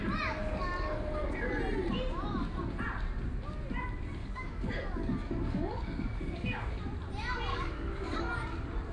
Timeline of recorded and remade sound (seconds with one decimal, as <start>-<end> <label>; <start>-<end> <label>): 0.0-0.4 recorded; 0.4-1.5 remade; 1.5-4.2 recorded; 4.2-6.8 remade; 6.8-7.5 recorded; 7.5-8.2 remade; 8.2-8.9 recorded